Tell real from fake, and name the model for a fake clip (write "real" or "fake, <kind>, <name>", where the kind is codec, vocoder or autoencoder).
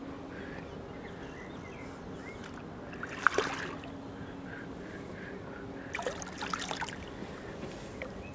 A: real